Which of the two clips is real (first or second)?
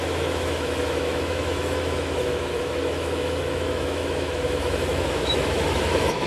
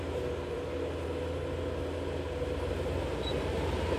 second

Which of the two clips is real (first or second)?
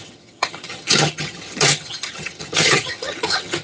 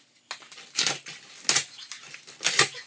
second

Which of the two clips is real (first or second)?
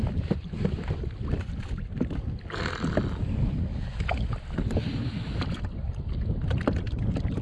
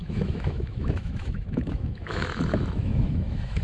first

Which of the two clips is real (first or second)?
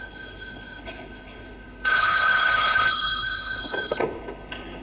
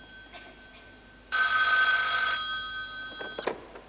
second